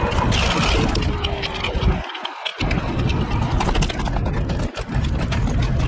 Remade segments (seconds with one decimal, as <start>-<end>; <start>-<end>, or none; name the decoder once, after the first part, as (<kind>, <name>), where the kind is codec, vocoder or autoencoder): none